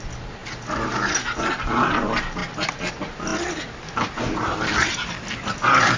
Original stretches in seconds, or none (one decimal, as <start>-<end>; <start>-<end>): 0.0-6.0